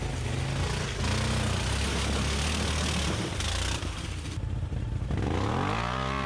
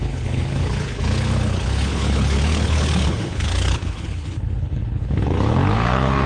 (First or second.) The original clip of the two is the first